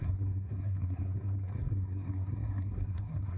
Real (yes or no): no